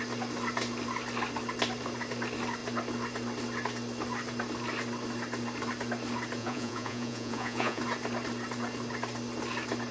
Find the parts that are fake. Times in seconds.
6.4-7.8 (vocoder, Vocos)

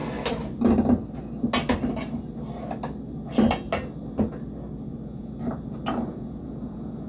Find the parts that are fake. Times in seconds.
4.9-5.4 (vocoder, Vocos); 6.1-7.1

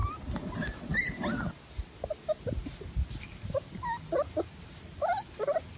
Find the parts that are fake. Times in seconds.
none

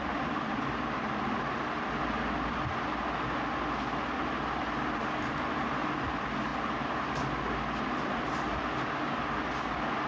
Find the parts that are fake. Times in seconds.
none

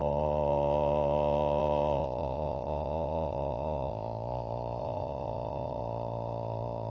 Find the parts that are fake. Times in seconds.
2.0-3.9 (vocoder, Vocos); 4.8-5.8

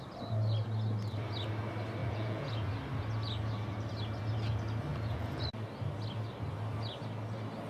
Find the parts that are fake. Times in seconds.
2.0-2.7 (vocoder, Vocos); 4.9-5.4

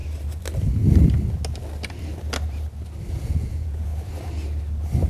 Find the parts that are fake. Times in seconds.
3.1-3.9 (vocoder, Vocos)

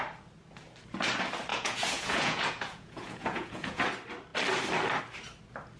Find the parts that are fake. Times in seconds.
1.5-3.8 (vocoder, Vocos)